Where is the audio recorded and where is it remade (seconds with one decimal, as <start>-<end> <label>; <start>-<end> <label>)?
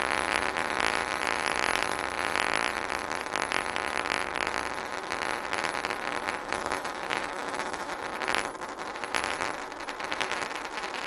0.0-6.4 recorded; 6.4-7.9 remade; 7.9-11.1 recorded